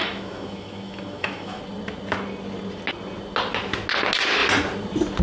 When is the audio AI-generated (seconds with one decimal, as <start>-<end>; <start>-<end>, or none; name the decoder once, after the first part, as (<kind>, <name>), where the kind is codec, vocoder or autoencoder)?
0.0-1.6 (autoencoder, DAC-VAE)